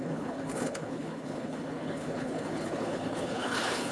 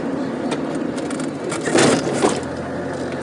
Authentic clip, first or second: second